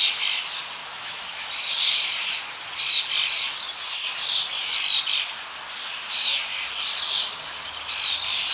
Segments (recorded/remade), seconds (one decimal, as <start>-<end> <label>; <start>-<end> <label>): 0.0-0.8 recorded; 0.8-1.5 remade; 1.5-8.5 recorded